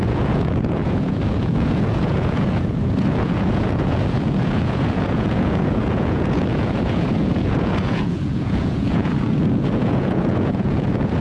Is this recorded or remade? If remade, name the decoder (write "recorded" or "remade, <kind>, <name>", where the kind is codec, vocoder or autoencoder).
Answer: remade, vocoder, Vocos